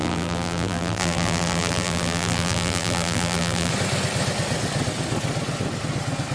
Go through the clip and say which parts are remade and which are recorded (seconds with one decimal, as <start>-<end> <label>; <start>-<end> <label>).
0.0-3.7 remade; 3.7-6.3 recorded